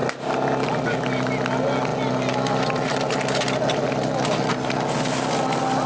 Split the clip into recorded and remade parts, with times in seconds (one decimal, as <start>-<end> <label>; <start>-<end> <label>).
0.0-5.9 recorded

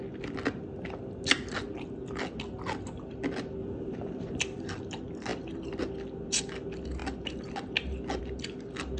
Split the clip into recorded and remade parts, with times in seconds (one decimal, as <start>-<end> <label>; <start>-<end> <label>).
0.0-3.6 recorded; 3.6-4.4 remade; 4.4-9.0 recorded

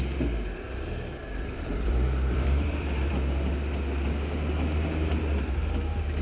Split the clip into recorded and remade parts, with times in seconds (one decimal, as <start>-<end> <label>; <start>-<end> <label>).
0.0-1.2 recorded; 1.2-3.1 remade; 3.1-6.2 recorded

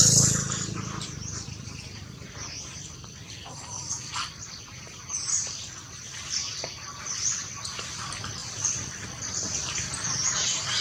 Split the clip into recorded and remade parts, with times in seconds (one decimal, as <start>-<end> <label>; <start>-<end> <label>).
0.0-8.4 recorded; 8.4-9.2 remade; 9.2-10.8 recorded

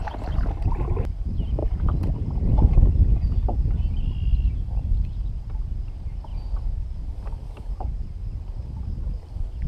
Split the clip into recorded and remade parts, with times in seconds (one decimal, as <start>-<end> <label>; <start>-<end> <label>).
0.0-1.6 remade; 1.6-2.2 recorded; 2.2-3.1 remade; 3.1-4.1 recorded; 4.1-6.3 remade; 6.3-7.6 recorded; 7.6-8.6 remade; 8.6-9.7 recorded

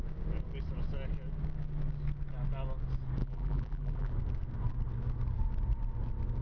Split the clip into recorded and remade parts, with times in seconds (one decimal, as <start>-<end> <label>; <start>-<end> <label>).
0.0-3.2 recorded; 3.2-4.1 remade; 4.1-6.4 recorded

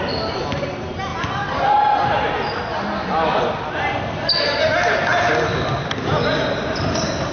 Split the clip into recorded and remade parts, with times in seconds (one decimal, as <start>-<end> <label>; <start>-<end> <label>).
0.0-7.3 recorded

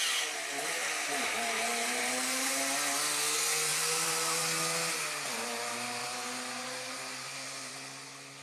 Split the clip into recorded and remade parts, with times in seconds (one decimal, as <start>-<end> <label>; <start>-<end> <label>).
0.0-0.8 recorded; 0.8-2.5 remade; 2.5-3.7 recorded; 3.7-4.4 remade; 4.4-6.0 recorded; 6.0-7.7 remade; 7.7-8.4 recorded